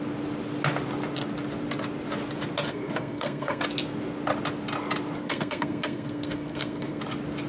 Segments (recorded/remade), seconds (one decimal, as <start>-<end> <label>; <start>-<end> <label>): 0.0-2.7 recorded; 2.7-3.6 remade; 3.6-5.2 recorded; 5.2-7.0 remade; 7.0-7.5 recorded